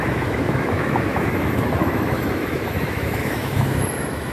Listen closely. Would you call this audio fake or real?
fake